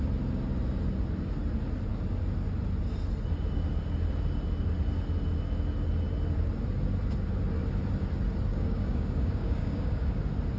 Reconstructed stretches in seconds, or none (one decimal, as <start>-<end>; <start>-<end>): 8.5-10.2